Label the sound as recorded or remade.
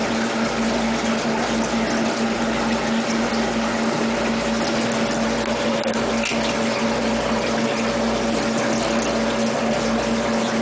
recorded